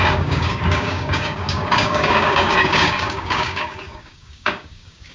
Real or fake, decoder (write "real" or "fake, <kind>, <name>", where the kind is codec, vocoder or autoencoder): fake, codec, DAC